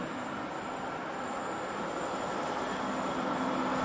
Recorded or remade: recorded